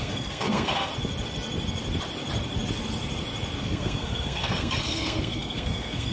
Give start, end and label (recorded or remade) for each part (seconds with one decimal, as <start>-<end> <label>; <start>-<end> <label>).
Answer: 0.0-0.9 remade; 0.9-3.6 recorded; 3.6-6.1 remade